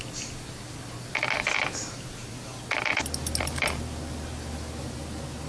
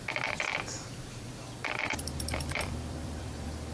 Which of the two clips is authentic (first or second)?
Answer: first